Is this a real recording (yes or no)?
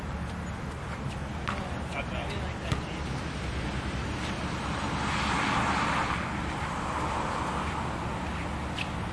yes